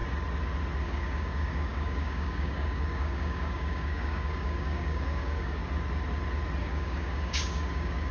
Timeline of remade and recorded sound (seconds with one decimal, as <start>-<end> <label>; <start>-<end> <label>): 0.0-0.8 recorded; 0.8-5.6 remade; 5.6-6.6 recorded; 6.6-8.1 remade